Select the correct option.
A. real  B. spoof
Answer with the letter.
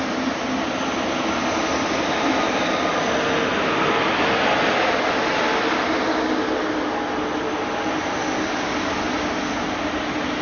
A